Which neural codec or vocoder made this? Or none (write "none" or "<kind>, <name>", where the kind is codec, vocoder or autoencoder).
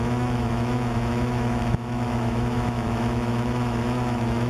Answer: autoencoder, DAC-VAE